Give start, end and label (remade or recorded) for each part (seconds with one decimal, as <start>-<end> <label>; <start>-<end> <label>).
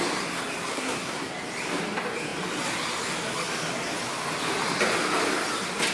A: 0.0-0.7 recorded; 0.7-1.3 remade; 1.3-5.9 recorded